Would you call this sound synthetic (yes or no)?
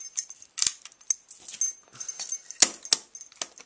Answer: no